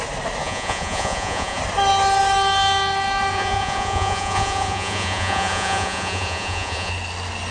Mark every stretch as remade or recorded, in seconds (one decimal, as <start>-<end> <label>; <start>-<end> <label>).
0.0-0.4 recorded; 0.4-1.6 remade; 1.6-3.3 recorded; 3.3-6.9 remade; 6.9-7.5 recorded